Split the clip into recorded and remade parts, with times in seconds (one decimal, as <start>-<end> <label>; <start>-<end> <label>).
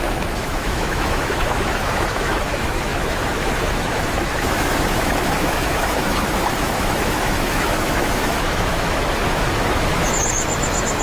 0.0-11.0 remade